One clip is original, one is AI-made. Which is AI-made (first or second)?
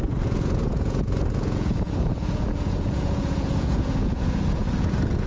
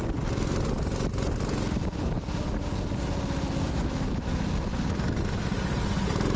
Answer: first